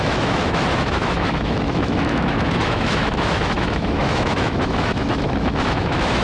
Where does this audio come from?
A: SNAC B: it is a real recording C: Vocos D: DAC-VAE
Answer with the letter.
D